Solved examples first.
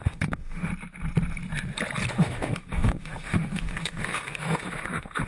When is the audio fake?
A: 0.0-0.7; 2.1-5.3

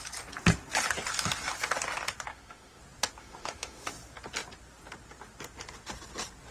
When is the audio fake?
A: 2.3-2.8; 3.2-3.9

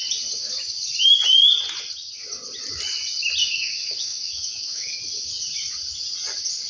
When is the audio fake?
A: 3.4-5.0

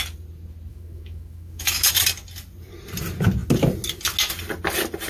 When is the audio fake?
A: 0.7-1.9

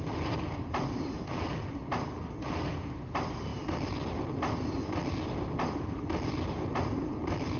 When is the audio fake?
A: none